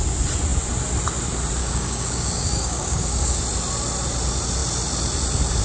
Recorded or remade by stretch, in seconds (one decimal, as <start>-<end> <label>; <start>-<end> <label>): 0.0-1.6 recorded; 1.6-3.4 remade; 3.4-5.6 recorded